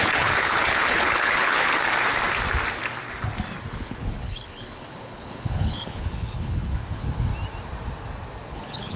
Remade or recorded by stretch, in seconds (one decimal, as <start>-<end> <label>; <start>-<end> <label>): 0.0-1.7 remade; 1.7-3.7 recorded; 3.7-7.3 remade; 7.3-8.5 recorded; 8.5-9.0 remade